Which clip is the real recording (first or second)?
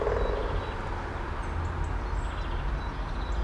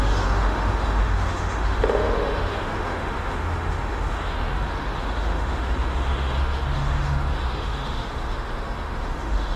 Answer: first